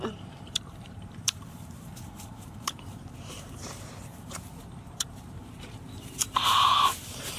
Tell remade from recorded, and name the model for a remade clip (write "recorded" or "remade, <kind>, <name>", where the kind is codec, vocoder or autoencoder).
remade, vocoder, BigVGAN v2